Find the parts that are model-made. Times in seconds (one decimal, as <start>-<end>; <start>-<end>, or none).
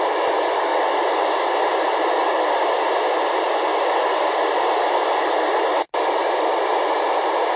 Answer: none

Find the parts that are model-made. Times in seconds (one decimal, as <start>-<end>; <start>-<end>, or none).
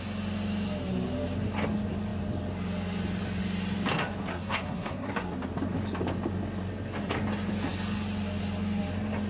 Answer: 4.3-5.3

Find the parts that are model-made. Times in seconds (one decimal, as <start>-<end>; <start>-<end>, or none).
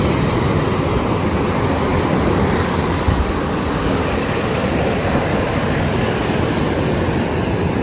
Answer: 1.9-6.4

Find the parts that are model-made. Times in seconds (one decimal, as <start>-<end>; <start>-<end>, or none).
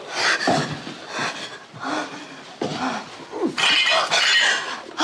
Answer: none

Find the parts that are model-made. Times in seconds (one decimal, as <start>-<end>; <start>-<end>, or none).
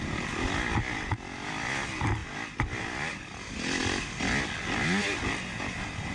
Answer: none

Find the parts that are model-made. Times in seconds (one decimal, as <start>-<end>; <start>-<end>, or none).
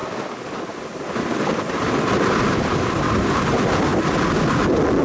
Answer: 0.0-3.9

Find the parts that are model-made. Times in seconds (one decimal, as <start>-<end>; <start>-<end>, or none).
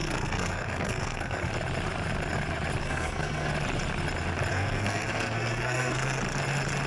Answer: 0.0-1.5; 2.8-3.5; 4.5-6.2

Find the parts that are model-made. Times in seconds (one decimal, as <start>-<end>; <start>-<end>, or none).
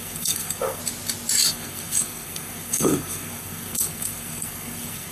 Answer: 0.0-0.8; 1.5-5.1